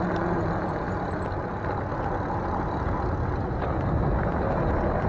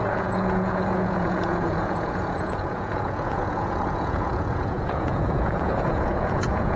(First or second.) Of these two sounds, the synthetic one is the second